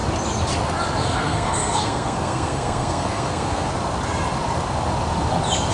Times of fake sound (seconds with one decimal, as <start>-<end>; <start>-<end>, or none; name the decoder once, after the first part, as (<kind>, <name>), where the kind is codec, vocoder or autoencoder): 1.0-3.7 (codec, SNAC)